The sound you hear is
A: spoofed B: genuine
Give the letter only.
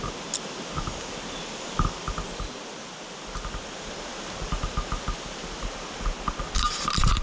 B